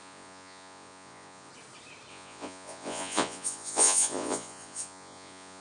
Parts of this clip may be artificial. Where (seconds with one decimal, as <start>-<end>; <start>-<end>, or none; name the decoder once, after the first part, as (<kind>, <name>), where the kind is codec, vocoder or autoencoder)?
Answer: 0.0-1.5 (vocoder, Vocos); 2.1-5.6